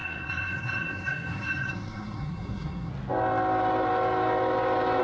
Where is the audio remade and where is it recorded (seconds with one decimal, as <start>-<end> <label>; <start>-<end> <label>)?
0.0-2.9 remade; 2.9-5.0 recorded